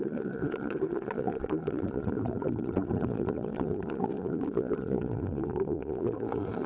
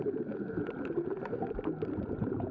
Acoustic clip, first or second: second